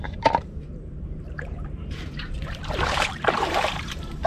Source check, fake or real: fake